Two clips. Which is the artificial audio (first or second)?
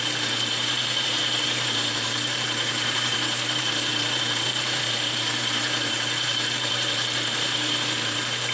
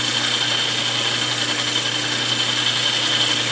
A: first